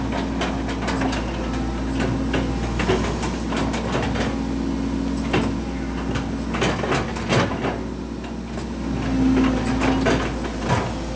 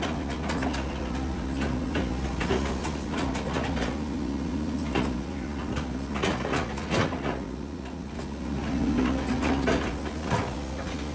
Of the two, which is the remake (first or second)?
second